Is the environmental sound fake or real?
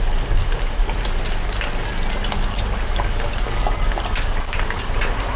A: real